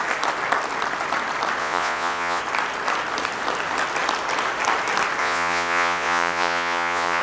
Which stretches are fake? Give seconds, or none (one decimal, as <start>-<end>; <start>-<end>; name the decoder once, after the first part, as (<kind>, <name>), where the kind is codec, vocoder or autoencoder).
1.6-2.4 (vocoder, Vocos); 5.2-7.2